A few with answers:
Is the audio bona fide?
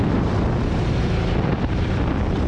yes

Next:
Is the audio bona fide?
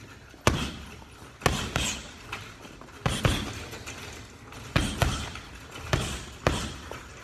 yes